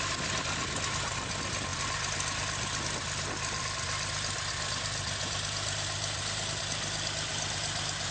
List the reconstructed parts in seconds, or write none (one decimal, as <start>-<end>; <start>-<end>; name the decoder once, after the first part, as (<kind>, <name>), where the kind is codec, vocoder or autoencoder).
none